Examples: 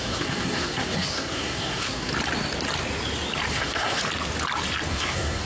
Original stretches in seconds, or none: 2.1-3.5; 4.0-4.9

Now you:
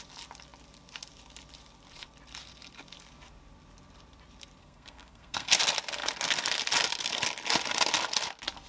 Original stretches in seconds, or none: 0.0-4.6; 5.6-8.7

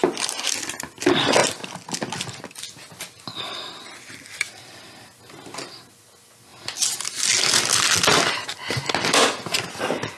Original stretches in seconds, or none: 0.0-10.2

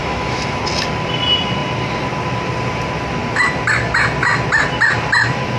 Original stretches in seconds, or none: 0.6-5.6

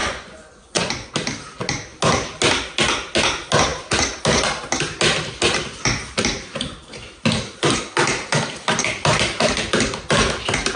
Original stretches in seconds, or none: 1.1-10.8

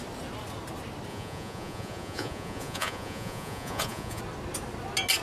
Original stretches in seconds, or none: 0.0-1.1; 4.2-5.2

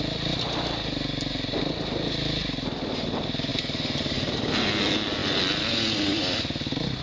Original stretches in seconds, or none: 0.0-3.5; 4.4-7.0

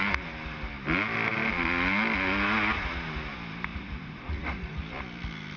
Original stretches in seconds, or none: 0.0-3.7; 4.8-5.6